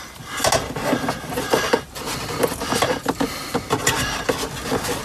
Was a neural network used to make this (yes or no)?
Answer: no